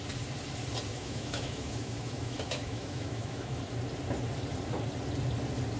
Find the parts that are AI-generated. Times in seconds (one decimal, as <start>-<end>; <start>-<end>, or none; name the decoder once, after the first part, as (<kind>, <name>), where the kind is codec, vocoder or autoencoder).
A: 0.9-3.6 (autoencoder, DAC-VAE)